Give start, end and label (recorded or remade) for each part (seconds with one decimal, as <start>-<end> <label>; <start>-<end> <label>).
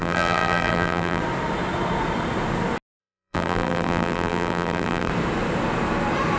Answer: 0.0-1.2 remade; 1.2-3.0 recorded; 3.0-5.1 remade; 5.1-6.4 recorded